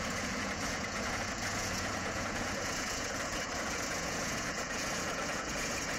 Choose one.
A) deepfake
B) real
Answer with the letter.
A